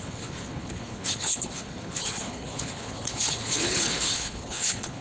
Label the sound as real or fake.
fake